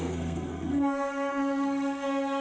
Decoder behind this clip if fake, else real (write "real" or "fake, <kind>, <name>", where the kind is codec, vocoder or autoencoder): fake, codec, SNAC